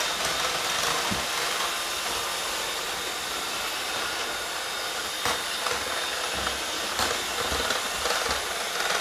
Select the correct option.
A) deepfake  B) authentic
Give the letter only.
B